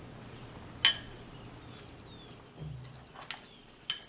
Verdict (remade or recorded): recorded